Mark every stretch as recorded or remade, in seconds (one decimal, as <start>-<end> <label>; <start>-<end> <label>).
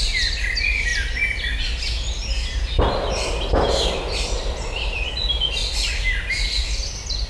0.0-7.3 recorded